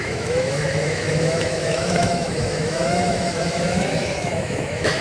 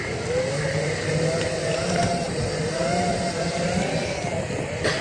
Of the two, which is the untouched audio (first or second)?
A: second